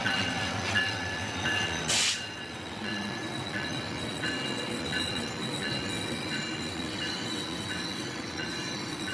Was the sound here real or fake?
fake